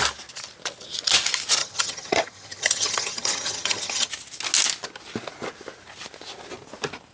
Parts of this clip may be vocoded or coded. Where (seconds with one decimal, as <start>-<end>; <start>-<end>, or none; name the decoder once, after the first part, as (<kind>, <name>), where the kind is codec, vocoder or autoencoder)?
1.6-4.1 (vocoder, HiFi-GAN)